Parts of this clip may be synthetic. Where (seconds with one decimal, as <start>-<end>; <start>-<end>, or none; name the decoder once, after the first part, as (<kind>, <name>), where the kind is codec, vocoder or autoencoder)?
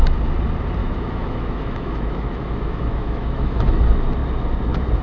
0.8-3.8 (autoencoder, DAC-VAE)